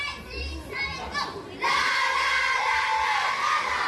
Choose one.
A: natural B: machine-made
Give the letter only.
A